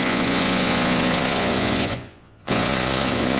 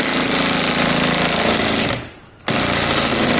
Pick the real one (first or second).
second